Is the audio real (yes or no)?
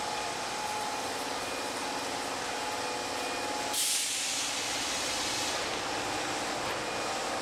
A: yes